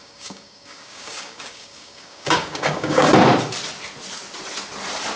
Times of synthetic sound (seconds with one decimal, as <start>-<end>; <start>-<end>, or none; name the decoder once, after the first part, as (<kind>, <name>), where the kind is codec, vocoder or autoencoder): 0.0-3.1 (codec, DAC)